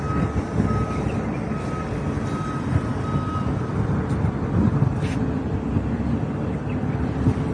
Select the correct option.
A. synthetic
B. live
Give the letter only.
B